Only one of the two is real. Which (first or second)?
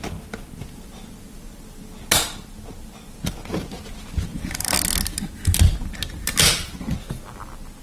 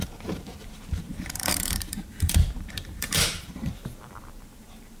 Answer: first